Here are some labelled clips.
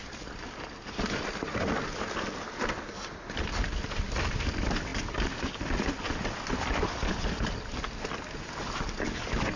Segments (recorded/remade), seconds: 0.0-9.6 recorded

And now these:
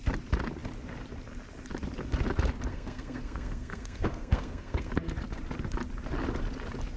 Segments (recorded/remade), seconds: 0.0-2.7 recorded; 2.7-4.9 remade; 4.9-7.0 recorded

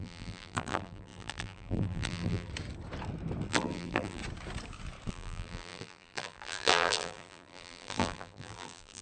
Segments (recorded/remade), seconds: 0.0-2.5 remade; 2.5-3.5 recorded; 3.5-4.2 remade; 4.2-5.1 recorded; 5.1-9.0 remade

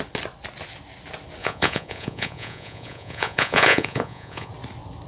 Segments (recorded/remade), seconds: 0.0-1.4 recorded; 1.4-4.5 remade; 4.5-5.1 recorded

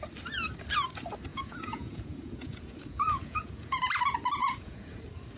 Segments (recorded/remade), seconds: 0.0-1.3 recorded; 1.3-3.8 remade; 3.8-4.4 recorded; 4.4-5.0 remade; 5.0-5.4 recorded

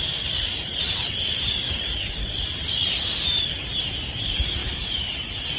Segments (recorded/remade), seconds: 0.0-0.7 recorded; 0.7-4.1 remade; 4.1-4.6 recorded; 4.6-5.6 remade

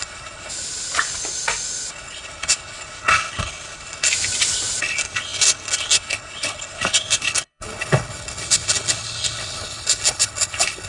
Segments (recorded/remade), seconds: 0.0-0.5 remade; 0.5-1.9 recorded; 1.9-4.1 remade; 4.1-4.8 recorded; 4.8-10.9 remade

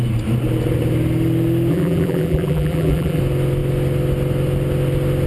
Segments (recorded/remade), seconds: 0.0-1.7 recorded; 1.7-3.2 remade; 3.2-5.3 recorded